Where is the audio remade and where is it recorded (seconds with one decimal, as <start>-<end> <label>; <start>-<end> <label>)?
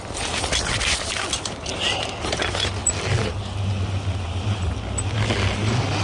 0.0-6.0 recorded